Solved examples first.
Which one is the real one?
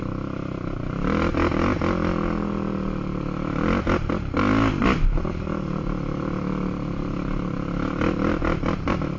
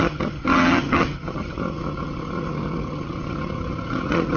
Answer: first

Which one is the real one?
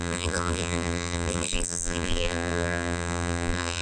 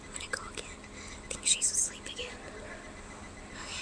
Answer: second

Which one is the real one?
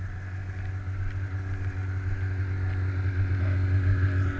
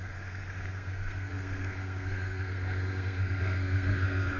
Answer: first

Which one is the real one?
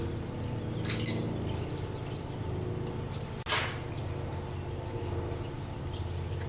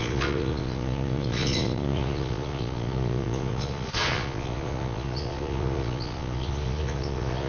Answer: first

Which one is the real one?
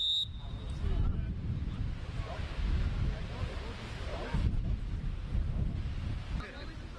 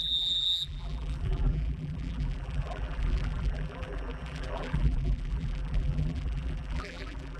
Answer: first